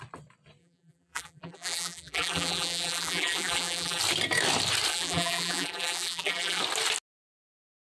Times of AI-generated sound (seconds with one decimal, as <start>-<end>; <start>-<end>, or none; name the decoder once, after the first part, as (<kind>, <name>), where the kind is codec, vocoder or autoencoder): 0.6-4.0 (vocoder, BigVGAN v2); 4.9-6.6